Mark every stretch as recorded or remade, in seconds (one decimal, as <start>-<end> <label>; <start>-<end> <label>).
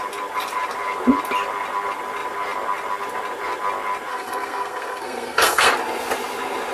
0.0-4.1 recorded; 4.1-5.7 remade; 5.7-6.7 recorded